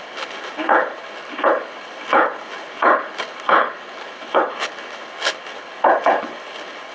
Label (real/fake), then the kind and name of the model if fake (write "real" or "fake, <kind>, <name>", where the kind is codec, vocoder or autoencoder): fake, codec, HILCodec